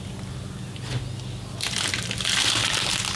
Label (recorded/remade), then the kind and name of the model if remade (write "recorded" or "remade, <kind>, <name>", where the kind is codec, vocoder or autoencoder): recorded